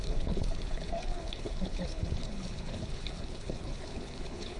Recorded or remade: remade